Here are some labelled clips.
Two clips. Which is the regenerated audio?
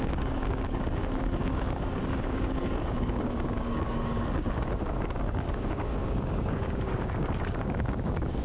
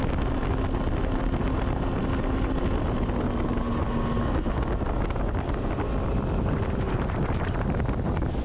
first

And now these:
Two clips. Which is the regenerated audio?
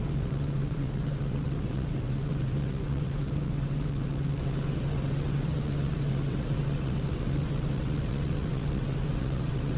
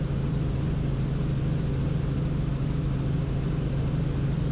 first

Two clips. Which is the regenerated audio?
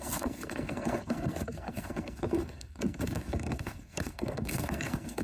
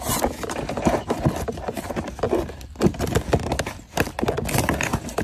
first